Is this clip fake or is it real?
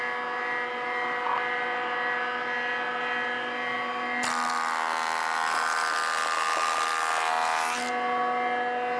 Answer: real